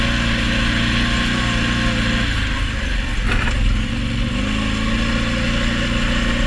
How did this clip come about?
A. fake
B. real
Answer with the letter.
B